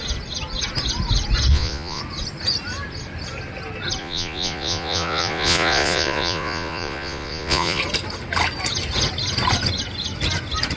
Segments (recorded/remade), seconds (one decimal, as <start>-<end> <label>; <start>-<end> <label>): 0.0-1.5 recorded; 1.5-2.0 remade; 2.0-4.0 recorded; 4.0-7.8 remade; 7.8-10.8 recorded